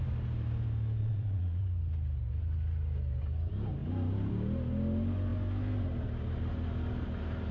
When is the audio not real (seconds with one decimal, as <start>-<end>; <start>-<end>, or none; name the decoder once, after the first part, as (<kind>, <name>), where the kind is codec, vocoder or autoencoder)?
1.0-1.6 (vocoder, Vocos)